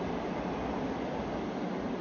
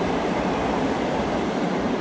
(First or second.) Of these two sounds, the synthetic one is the second